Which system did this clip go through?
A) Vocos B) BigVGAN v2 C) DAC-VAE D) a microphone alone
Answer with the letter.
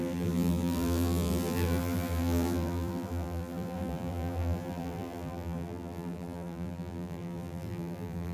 B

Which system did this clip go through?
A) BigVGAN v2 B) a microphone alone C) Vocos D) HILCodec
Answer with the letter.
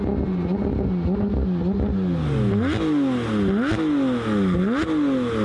B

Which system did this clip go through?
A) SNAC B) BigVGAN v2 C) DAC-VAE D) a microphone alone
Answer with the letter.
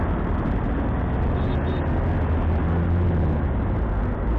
D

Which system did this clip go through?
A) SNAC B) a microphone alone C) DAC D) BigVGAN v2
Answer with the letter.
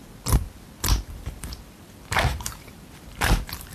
D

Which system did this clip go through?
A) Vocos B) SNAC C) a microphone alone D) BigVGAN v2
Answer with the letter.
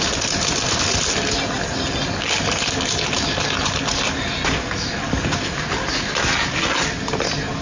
C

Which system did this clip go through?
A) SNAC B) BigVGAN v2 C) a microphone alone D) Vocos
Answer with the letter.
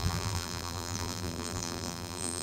B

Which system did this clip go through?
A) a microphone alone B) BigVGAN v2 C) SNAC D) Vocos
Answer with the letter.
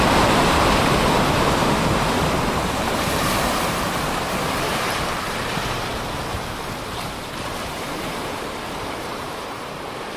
B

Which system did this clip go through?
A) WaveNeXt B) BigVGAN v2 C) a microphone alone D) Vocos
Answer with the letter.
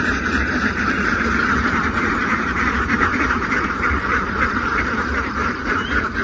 B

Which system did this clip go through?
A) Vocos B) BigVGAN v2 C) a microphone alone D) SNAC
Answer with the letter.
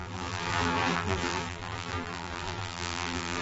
B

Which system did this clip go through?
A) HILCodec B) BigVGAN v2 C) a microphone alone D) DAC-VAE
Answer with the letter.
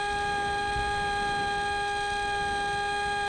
C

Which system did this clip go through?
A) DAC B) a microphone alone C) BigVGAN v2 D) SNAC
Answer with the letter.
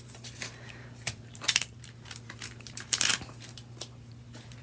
C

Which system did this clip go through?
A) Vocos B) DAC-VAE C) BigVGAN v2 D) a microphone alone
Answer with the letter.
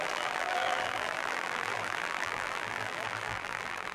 C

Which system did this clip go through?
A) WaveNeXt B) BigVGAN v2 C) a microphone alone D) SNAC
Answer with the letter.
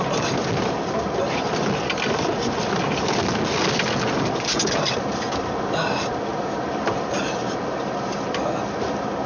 C